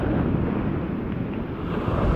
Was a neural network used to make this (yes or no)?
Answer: no